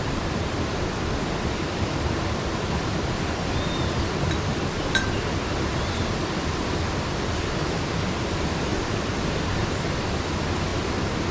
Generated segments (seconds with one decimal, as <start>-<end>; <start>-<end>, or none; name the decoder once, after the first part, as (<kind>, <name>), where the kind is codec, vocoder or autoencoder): 0.0-10.7 (vocoder, BigVGAN v2)